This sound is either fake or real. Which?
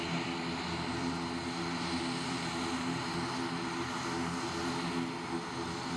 real